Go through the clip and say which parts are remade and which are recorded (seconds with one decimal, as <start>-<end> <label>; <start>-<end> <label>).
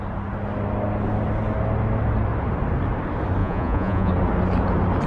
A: 0.0-3.4 recorded; 3.4-4.1 remade; 4.1-5.1 recorded